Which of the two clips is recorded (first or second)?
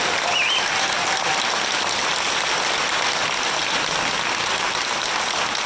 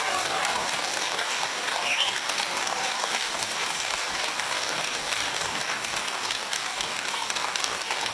first